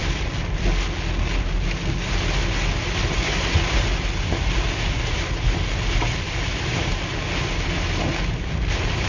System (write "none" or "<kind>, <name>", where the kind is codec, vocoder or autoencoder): none